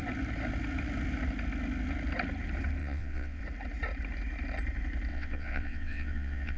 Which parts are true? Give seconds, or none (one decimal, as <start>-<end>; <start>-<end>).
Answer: 0.0-2.8; 3.4-5.1